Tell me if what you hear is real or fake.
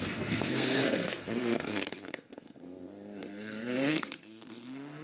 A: fake